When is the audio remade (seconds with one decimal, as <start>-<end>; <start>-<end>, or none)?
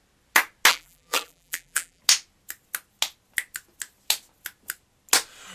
0.7-2.0